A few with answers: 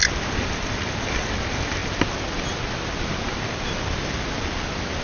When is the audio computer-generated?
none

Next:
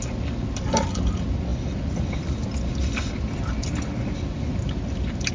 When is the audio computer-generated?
none

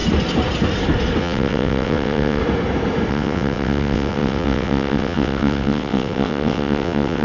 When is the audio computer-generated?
1.2-2.4 (vocoder, WaveNeXt); 3.1-7.2